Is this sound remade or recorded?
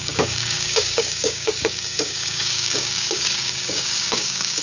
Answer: remade